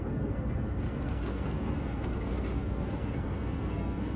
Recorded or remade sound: remade